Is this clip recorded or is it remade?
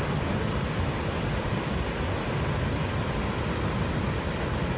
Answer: recorded